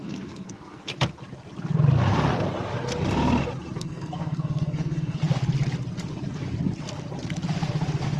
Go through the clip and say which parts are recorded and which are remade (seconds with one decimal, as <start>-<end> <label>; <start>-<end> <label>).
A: 0.0-0.9 remade; 0.9-3.8 recorded; 3.8-5.2 remade; 5.2-8.2 recorded